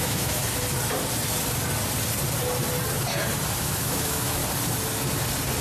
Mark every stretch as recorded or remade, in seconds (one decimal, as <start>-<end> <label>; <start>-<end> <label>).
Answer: 0.0-0.4 remade; 0.4-3.6 recorded; 3.6-4.4 remade; 4.4-5.6 recorded

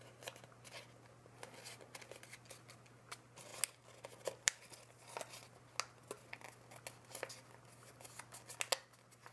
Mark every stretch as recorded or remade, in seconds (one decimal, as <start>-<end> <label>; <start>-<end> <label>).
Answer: 0.0-9.3 recorded

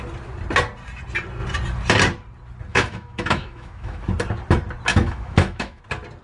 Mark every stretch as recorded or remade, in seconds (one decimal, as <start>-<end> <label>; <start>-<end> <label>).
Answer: 0.0-2.7 recorded; 2.7-4.0 remade; 4.0-4.9 recorded; 4.9-5.8 remade; 5.8-6.2 recorded

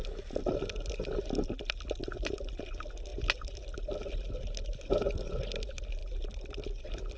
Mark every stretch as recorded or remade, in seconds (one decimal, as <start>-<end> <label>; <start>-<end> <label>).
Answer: 0.0-7.2 recorded

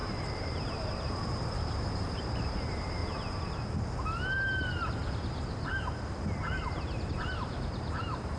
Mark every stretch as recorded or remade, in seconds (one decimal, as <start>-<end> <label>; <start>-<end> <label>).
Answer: 0.0-3.0 remade; 3.0-5.7 recorded; 5.7-8.4 remade

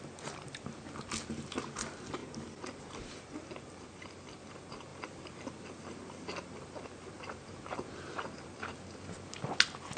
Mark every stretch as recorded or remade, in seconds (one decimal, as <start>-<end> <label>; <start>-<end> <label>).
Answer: 0.0-10.0 recorded